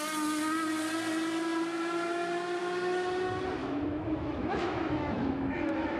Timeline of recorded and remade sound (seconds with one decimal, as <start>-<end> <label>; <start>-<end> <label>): 0.0-3.6 recorded; 3.6-6.0 remade